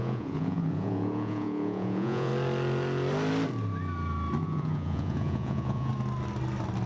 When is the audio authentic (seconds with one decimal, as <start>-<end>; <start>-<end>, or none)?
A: 2.3-4.4; 5.9-6.9